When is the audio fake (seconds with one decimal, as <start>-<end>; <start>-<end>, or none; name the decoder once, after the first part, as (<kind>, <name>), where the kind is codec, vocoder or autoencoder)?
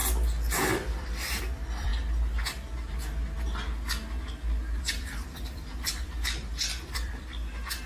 0.6-1.9 (vocoder, BigVGAN v2); 4.8-7.9